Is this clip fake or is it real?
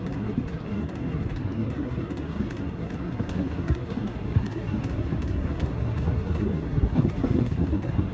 fake